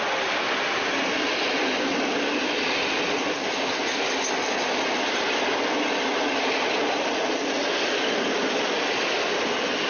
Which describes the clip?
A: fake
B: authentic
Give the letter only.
B